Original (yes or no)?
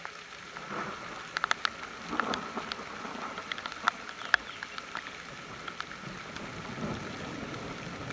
yes